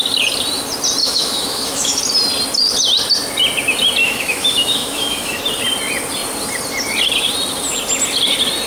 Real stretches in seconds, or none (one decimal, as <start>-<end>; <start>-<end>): 0.0-1.0; 2.0-4.0; 5.4-8.7